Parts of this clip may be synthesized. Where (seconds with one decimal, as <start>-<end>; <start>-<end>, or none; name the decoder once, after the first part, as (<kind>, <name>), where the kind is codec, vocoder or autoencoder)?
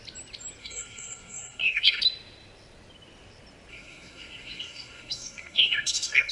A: 0.6-2.0 (codec, SNAC); 3.7-6.3